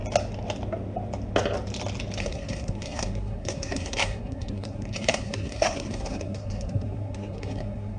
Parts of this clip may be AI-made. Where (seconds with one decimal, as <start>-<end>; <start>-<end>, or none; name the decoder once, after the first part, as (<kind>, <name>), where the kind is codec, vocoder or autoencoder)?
2.2-8.0 (codec, SNAC)